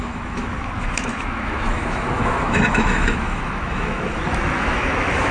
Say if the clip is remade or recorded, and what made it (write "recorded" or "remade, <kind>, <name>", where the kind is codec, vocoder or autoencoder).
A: remade, autoencoder, DAC-VAE